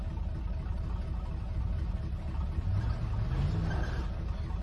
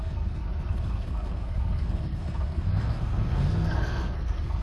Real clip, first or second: first